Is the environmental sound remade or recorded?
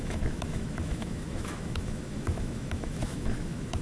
remade